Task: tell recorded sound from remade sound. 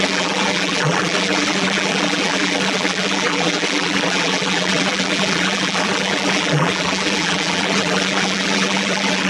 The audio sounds remade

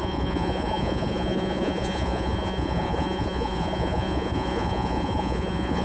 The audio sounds remade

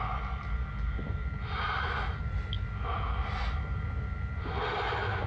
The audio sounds remade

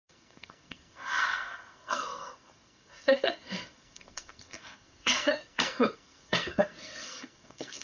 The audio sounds remade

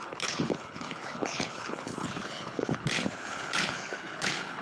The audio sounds remade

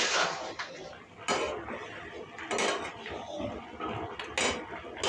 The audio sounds recorded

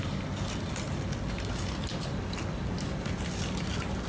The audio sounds recorded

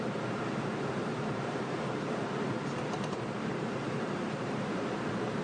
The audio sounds remade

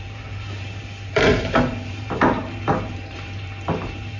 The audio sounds remade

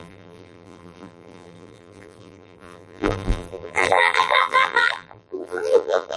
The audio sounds remade